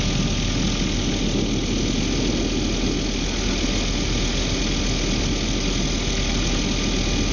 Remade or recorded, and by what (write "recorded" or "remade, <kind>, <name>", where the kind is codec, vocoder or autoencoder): recorded